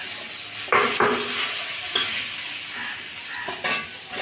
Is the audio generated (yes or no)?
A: no